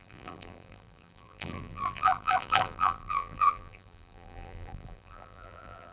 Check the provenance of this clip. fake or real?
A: fake